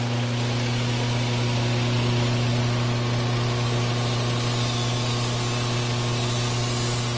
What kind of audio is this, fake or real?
real